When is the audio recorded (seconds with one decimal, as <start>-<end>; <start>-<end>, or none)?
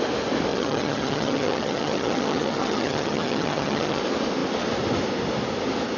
0.0-0.5; 4.0-6.0